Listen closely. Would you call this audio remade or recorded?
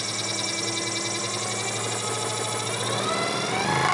recorded